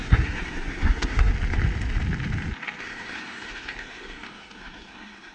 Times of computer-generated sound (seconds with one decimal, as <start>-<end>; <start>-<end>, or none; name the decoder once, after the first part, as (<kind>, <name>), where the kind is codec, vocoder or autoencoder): 0.0-1.3 (codec, SNAC); 2.8-5.3